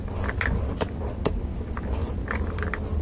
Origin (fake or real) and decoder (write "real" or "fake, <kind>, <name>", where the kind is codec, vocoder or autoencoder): real